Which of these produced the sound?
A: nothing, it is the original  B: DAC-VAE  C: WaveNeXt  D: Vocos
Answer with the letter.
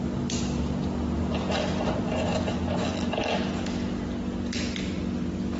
A